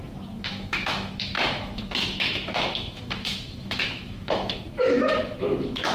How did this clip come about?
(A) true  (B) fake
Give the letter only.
B